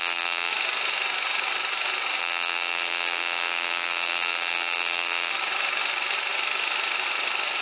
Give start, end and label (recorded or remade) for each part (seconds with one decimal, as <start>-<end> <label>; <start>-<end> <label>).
0.0-0.5 remade; 0.5-2.2 recorded; 2.2-5.3 remade; 5.3-7.6 recorded